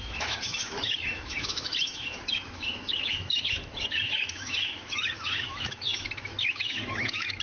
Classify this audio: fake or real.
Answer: fake